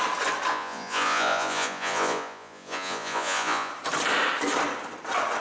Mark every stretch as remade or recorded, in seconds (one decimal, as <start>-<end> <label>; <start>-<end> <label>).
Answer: 0.0-0.5 recorded; 0.5-3.7 remade; 3.7-5.4 recorded